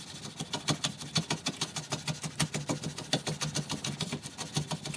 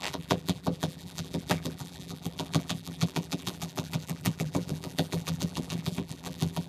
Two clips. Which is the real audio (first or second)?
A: first